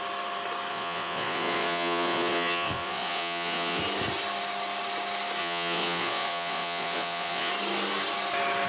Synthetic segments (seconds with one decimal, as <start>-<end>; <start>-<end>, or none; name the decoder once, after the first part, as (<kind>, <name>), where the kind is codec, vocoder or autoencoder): 0.7-3.8 (vocoder, Vocos); 5.4-7.5